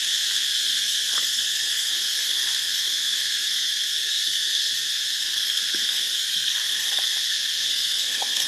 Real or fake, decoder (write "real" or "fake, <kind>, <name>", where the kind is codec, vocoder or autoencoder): fake, codec, SNAC